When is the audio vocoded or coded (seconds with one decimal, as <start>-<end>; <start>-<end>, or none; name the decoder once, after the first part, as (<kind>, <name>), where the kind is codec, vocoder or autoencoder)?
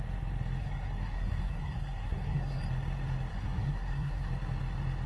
0.6-2.6 (codec, SNAC); 3.3-4.3